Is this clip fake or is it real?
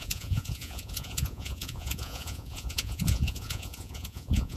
fake